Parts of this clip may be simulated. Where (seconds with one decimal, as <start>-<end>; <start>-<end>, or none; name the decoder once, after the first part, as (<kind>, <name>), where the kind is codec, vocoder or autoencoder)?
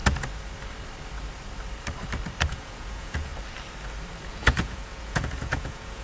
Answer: 2.5-3.3 (vocoder, Vocos); 4.3-6.0